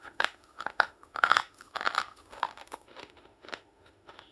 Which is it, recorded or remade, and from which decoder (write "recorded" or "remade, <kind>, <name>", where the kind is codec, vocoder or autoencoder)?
remade, autoencoder, DAC-VAE